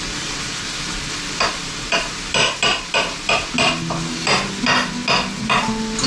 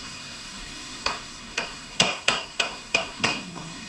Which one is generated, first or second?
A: second